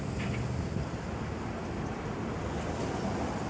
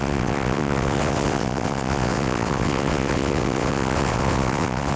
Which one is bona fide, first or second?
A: first